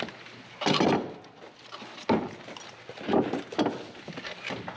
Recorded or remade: recorded